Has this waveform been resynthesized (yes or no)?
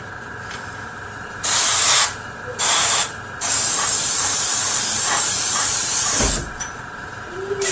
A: yes